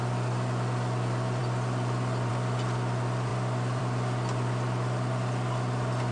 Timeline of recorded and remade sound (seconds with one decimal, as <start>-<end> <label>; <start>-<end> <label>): 0.0-6.1 recorded